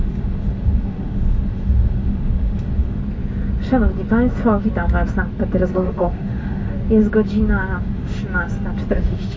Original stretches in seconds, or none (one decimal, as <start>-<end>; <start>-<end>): 3.0-5.7; 6.7-7.8; 8.2-8.9